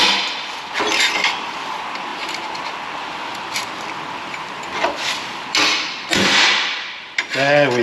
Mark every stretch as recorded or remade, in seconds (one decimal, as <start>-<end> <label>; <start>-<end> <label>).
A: 0.0-2.1 recorded; 2.1-2.7 remade; 2.7-7.8 recorded